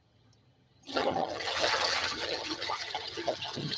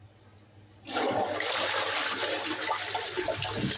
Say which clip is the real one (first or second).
second